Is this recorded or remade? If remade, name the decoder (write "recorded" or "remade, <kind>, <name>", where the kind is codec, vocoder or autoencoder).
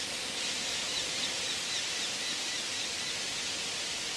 recorded